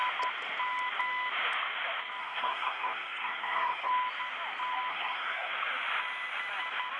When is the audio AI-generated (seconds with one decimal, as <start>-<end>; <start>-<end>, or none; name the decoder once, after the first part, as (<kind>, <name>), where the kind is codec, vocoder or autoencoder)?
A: 2.2-3.9 (codec, SNAC); 4.9-5.5